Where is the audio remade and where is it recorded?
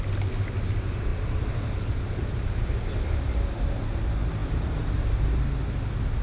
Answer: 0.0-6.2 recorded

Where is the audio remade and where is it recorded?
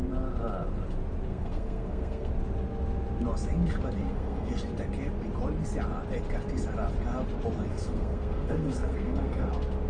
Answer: 0.0-1.3 recorded; 1.3-2.3 remade; 2.3-4.0 recorded; 4.0-4.5 remade; 4.5-7.7 recorded; 7.7-9.5 remade; 9.5-9.9 recorded